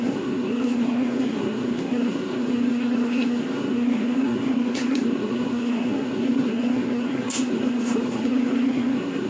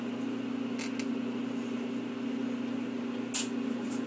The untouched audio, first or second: second